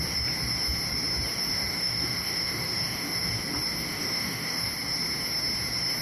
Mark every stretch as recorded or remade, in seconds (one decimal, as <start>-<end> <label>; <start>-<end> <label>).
0.0-1.5 recorded; 1.5-3.3 remade; 3.3-3.9 recorded; 3.9-4.7 remade; 4.7-6.0 recorded